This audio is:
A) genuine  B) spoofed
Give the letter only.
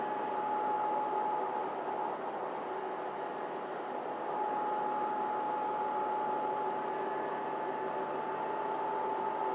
A